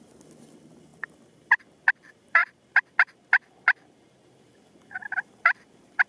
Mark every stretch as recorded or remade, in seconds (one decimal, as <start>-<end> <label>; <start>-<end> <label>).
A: 0.0-6.1 recorded